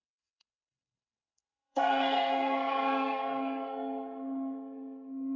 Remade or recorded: remade